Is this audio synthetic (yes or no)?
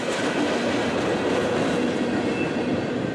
no